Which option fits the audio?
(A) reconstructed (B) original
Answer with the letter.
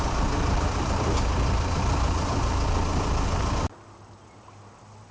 B